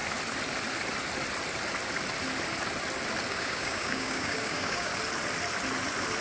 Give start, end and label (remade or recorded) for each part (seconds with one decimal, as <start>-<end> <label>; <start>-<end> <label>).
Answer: 0.0-3.3 recorded; 3.3-4.9 remade; 4.9-6.2 recorded